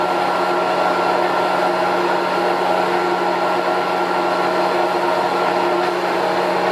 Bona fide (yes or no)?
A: yes